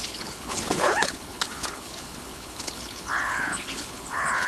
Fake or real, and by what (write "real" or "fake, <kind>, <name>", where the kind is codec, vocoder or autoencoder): fake, codec, HILCodec